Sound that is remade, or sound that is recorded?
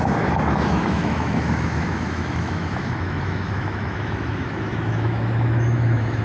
remade